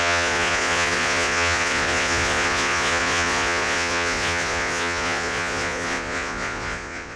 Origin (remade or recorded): remade